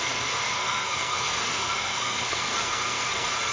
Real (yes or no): no